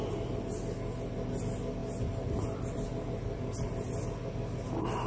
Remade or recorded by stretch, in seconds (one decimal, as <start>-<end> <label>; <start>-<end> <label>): 0.0-5.1 recorded